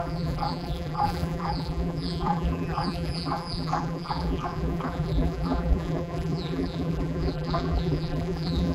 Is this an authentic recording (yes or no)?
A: no